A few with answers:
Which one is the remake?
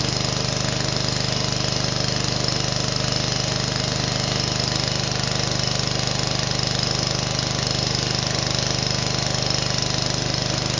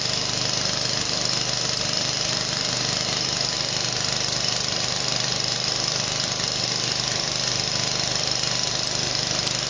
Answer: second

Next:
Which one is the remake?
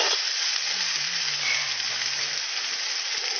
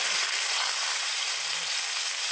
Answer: second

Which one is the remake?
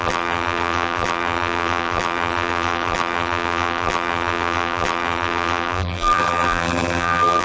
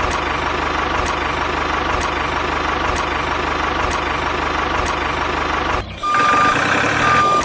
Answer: first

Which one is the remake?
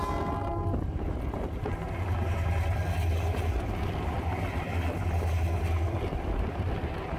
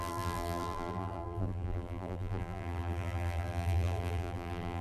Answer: second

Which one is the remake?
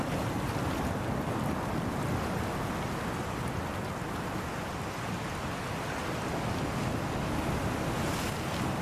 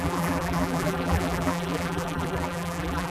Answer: second